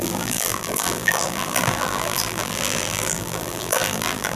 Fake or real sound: fake